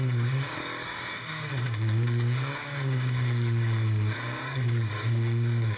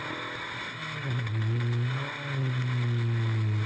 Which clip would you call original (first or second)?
second